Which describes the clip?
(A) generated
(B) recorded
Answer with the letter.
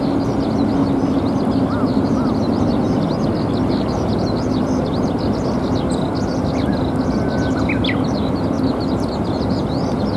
B